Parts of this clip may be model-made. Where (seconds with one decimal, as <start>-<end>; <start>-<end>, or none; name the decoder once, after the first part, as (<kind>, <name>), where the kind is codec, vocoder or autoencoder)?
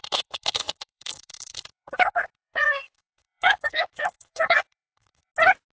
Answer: 0.0-5.3 (codec, SNAC)